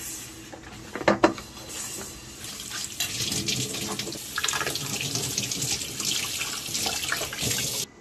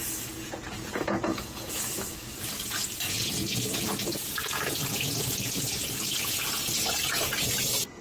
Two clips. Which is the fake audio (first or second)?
second